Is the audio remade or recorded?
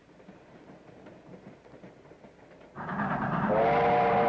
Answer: recorded